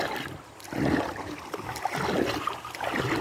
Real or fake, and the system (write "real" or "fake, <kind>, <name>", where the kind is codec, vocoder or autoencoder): real